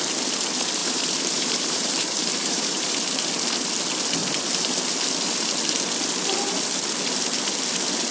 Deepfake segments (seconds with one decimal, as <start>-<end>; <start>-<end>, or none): 0.8-3.3